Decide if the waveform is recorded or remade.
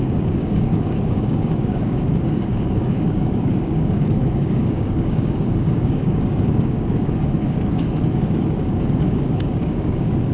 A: remade